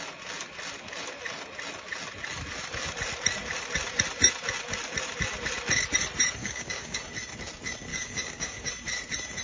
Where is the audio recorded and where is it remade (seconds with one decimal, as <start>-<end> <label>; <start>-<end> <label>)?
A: 0.0-6.4 recorded; 6.4-7.0 remade; 7.0-7.9 recorded; 7.9-8.7 remade; 8.7-9.4 recorded